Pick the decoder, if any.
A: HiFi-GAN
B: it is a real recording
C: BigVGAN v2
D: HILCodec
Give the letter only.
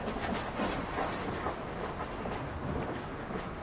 B